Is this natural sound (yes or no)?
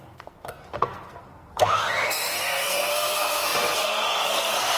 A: no